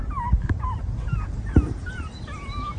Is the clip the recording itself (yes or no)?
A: no